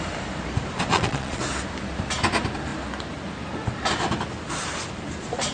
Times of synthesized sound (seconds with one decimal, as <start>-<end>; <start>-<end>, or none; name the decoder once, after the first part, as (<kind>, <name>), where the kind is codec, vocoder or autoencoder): 0.9-1.4 (vocoder, Vocos)